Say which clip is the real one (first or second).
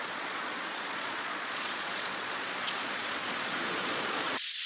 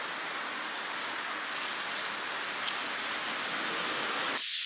second